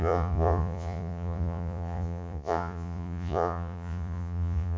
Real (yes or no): no